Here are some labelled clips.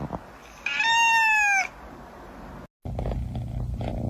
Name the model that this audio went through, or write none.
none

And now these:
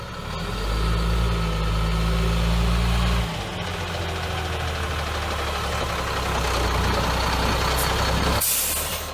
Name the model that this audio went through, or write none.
none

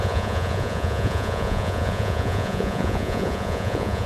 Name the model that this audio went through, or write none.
vocoder, Vocos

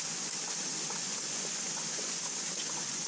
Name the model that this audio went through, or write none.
vocoder, Vocos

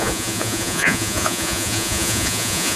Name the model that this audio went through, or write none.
vocoder, Vocos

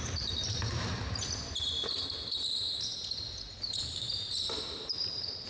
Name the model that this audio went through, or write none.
vocoder, BigVGAN v2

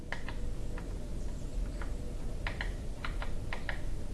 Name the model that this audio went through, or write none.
none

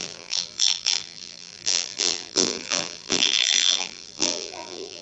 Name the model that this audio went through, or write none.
vocoder, BigVGAN v2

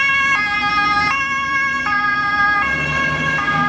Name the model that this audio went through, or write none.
none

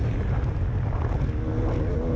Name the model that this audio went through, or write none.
none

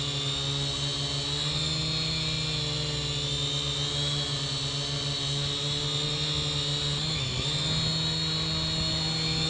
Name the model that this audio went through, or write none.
none